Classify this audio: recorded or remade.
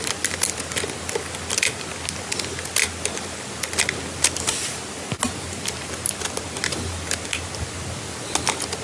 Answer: recorded